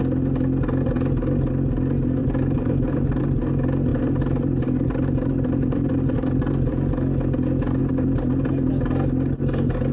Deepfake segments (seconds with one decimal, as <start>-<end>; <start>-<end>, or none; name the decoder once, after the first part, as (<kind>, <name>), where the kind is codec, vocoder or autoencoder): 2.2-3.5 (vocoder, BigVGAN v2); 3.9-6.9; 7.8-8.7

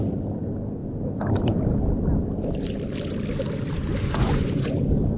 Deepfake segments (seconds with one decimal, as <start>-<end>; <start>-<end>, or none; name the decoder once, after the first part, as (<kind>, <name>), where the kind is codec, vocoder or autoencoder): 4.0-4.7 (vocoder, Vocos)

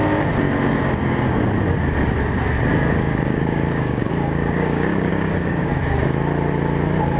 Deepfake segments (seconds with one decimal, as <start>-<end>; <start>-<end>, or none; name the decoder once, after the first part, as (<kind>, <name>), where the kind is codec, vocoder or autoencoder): 0.8-1.4 (codec, DAC); 2.7-5.8

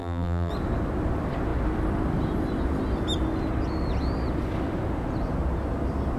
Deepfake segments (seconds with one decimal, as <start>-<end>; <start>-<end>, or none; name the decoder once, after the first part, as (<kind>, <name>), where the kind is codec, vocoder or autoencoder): 0.0-0.5 (vocoder, BigVGAN v2)

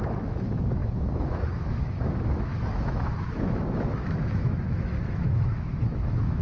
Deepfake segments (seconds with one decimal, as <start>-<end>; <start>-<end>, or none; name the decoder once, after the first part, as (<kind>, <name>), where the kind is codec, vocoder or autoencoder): 0.0-6.4 (autoencoder, DAC-VAE)